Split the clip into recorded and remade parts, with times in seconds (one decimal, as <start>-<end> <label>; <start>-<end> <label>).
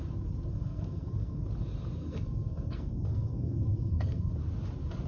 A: 0.0-0.5 recorded; 0.5-1.4 remade; 1.4-2.0 recorded; 2.0-4.3 remade; 4.3-5.1 recorded